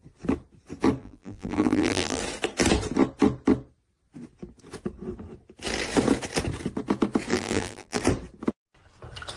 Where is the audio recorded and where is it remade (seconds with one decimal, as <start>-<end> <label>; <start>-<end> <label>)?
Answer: 0.0-1.0 recorded; 1.0-2.2 remade; 2.2-7.3 recorded; 7.3-8.0 remade; 8.0-9.4 recorded